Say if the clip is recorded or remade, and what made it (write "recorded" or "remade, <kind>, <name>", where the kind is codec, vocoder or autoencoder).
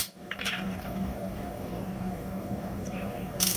remade, codec, DAC